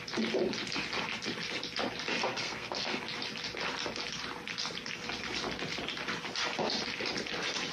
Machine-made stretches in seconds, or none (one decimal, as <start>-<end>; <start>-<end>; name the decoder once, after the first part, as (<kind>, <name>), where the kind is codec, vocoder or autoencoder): 2.2-3.0 (codec, SNAC)